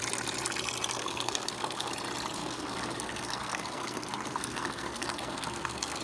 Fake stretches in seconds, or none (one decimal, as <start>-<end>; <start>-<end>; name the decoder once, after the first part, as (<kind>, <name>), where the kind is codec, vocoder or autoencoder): 1.0-1.9 (codec, SNAC); 2.4-6.0